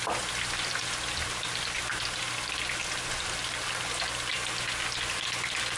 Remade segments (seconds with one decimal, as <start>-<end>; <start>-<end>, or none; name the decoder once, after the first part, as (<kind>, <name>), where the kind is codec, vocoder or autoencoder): none